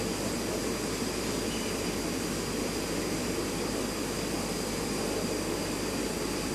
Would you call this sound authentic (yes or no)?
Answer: yes